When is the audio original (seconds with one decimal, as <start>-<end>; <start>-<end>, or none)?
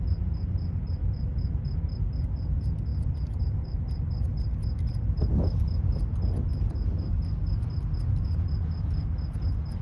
0.0-9.8